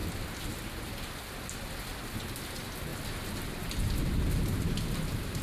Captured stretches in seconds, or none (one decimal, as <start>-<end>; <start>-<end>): 0.0-5.4